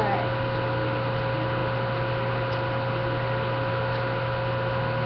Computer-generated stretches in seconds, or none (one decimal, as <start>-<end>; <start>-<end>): none